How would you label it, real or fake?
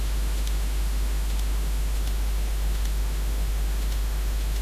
fake